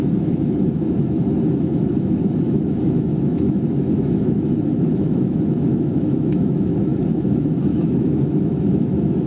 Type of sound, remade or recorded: remade